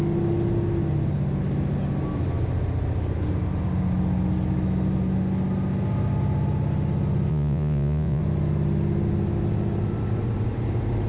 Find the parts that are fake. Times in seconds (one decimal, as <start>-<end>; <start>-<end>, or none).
7.3-8.2